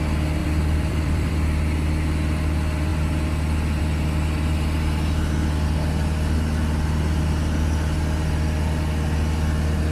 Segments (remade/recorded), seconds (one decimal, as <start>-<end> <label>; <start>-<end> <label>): 0.0-0.4 recorded; 0.4-1.3 remade; 1.3-9.9 recorded